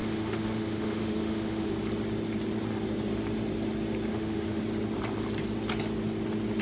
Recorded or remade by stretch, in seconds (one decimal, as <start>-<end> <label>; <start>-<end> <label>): 0.0-1.7 remade; 1.7-4.1 recorded; 4.1-4.6 remade; 4.6-6.6 recorded

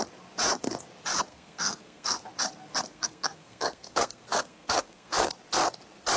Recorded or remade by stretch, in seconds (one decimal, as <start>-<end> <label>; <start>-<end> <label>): 0.0-1.3 recorded; 1.3-2.2 remade; 2.2-2.9 recorded; 2.9-5.3 remade; 5.3-6.2 recorded

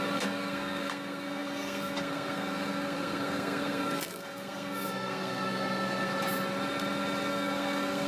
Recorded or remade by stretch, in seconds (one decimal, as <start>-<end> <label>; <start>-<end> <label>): 0.0-6.1 remade; 6.1-7.3 recorded; 7.3-8.1 remade